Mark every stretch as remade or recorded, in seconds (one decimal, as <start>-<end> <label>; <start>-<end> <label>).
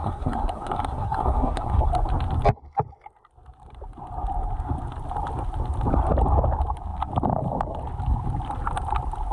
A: 0.0-1.9 remade; 1.9-9.3 recorded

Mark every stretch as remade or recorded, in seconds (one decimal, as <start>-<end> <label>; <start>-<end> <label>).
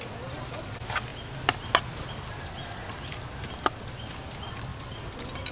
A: 0.0-5.5 recorded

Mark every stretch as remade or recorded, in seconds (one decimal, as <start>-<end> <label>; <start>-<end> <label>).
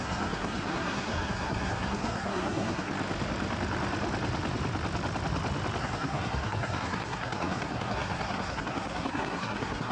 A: 0.0-2.9 remade; 2.9-5.8 recorded; 5.8-9.9 remade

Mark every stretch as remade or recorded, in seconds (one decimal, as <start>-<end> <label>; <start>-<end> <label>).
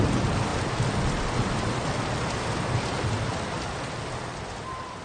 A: 0.0-5.0 recorded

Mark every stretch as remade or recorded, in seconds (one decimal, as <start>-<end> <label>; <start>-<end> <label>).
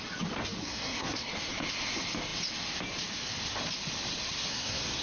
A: 0.0-0.6 recorded; 0.6-1.3 remade; 1.3-4.5 recorded; 4.5-5.0 remade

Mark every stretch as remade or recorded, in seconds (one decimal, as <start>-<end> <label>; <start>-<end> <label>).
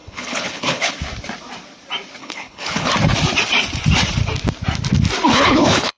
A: 0.0-0.9 remade; 0.9-2.2 recorded; 2.2-2.9 remade; 2.9-5.3 recorded; 5.3-6.0 remade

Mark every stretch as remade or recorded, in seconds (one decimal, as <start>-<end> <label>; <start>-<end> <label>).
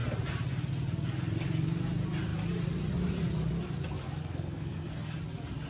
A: 0.0-4.2 recorded; 4.2-4.9 remade; 4.9-5.7 recorded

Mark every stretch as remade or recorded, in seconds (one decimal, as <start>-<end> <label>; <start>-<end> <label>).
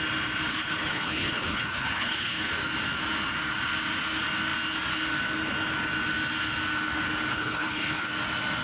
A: 0.0-0.5 recorded; 0.5-2.5 remade; 2.5-7.3 recorded; 7.3-8.1 remade; 8.1-8.6 recorded